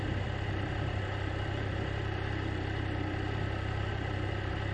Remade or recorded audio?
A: recorded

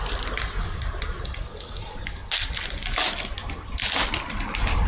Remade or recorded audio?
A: recorded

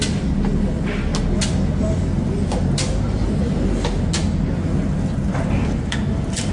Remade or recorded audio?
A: recorded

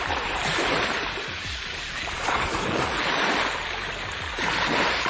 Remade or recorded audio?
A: remade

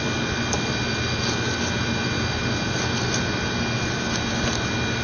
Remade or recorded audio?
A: recorded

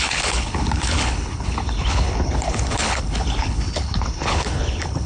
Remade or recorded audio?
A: remade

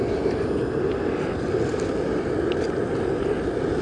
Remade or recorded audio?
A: recorded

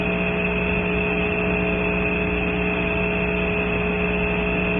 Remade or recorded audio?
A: recorded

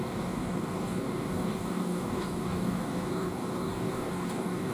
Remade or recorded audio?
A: remade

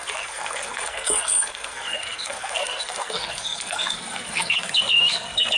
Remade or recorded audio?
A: remade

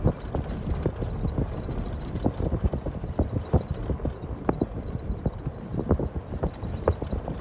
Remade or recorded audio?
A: recorded